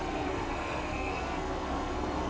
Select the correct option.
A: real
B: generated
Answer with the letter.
B